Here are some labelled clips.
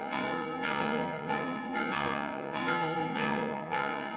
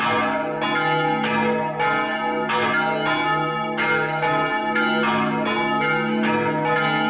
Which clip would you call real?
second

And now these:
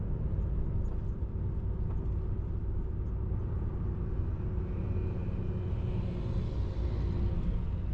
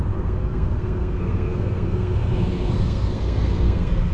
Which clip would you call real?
first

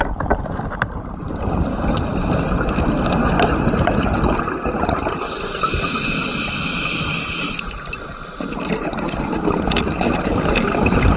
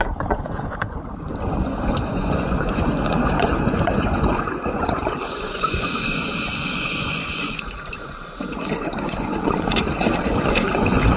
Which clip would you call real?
first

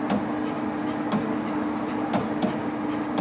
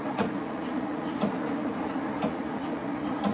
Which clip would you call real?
first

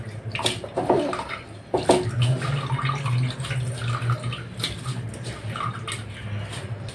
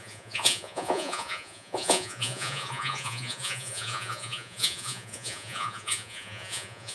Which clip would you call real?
first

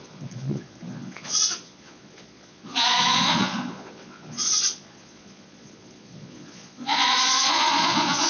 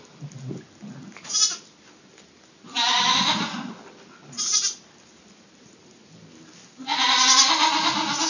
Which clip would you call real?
second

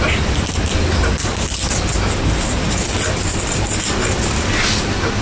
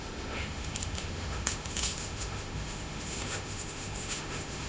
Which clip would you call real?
first